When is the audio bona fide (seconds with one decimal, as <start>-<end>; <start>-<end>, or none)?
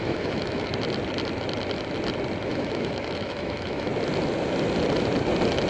0.7-2.4; 3.9-5.7